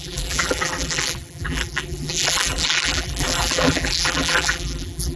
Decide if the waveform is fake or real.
fake